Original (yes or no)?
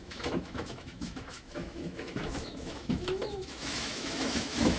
no